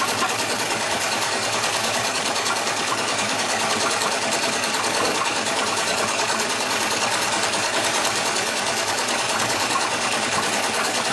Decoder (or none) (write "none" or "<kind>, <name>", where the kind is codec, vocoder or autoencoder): codec, DAC